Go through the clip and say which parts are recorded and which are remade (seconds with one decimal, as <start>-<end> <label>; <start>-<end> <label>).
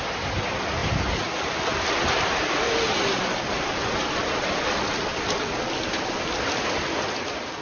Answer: 0.0-7.6 recorded